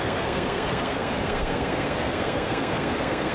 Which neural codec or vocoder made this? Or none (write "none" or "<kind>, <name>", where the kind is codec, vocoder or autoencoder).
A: codec, SNAC